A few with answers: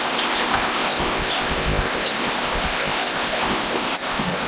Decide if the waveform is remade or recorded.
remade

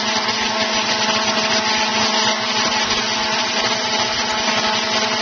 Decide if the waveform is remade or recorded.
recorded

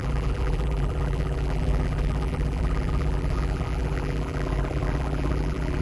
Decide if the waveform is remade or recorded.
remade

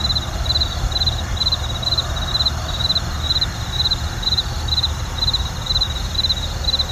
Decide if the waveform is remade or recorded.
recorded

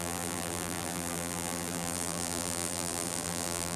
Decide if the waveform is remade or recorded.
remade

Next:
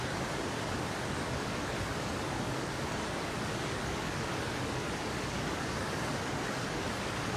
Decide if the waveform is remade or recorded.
remade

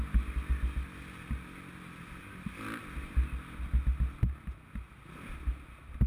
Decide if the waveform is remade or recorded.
recorded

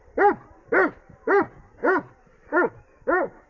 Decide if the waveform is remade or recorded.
recorded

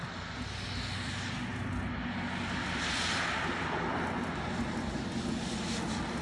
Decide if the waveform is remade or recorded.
recorded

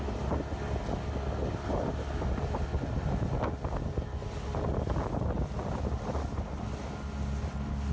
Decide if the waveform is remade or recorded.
recorded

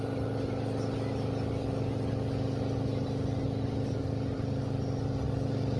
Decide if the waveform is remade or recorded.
recorded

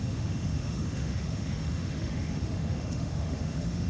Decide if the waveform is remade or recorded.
remade